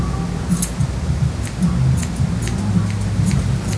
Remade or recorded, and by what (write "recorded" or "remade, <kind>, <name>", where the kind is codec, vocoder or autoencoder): recorded